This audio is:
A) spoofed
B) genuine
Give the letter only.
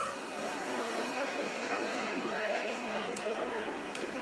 A